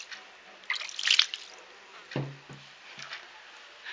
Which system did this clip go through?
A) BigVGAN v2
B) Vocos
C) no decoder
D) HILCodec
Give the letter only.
C